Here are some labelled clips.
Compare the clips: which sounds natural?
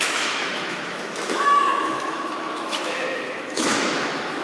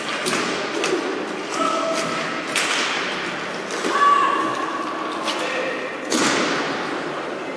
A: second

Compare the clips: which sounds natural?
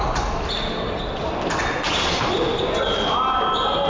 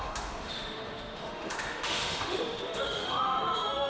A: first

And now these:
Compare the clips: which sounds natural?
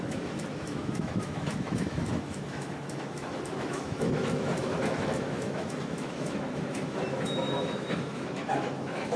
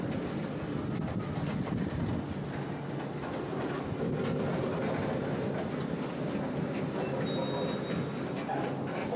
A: second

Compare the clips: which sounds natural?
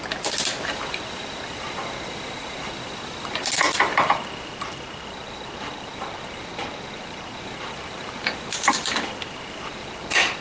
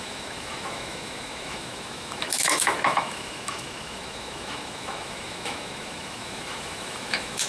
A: first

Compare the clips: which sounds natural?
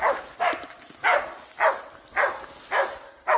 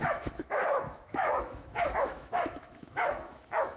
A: first